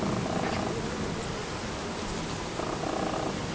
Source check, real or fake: real